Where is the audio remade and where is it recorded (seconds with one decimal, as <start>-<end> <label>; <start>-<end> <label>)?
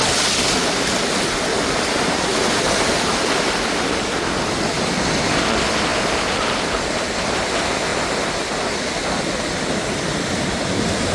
0.0-1.5 recorded; 1.5-3.5 remade; 3.5-5.9 recorded; 5.9-7.4 remade; 7.4-11.1 recorded